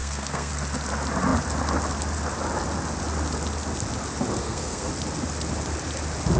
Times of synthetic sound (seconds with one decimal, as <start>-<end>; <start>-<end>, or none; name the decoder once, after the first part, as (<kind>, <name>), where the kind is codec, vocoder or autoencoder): 0.0-0.5 (codec, SNAC); 4.4-4.9